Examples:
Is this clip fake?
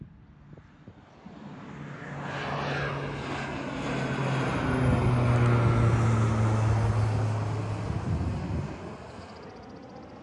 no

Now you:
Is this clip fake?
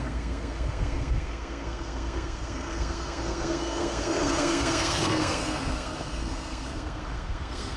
yes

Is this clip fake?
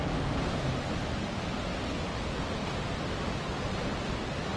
no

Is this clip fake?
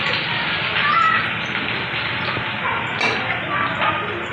no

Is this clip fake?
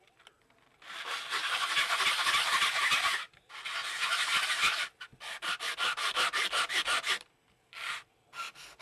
no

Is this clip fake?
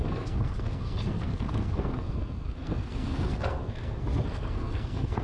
yes